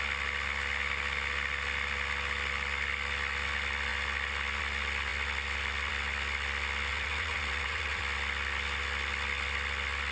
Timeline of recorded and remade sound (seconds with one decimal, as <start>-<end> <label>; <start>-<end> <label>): 0.0-6.9 recorded; 6.9-8.0 remade; 8.0-10.1 recorded